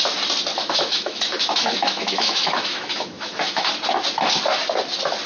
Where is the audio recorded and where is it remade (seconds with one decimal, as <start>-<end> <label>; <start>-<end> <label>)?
0.0-0.5 recorded; 0.5-3.7 remade; 3.7-5.3 recorded